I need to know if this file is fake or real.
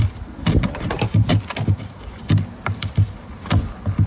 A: real